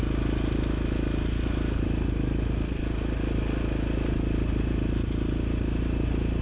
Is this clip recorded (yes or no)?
yes